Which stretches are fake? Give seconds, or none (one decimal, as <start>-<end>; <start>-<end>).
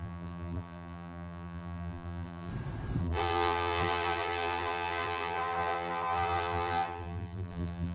0.0-2.5; 3.0-7.9